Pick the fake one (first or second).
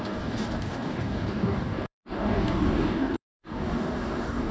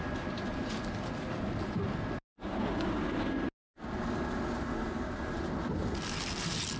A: first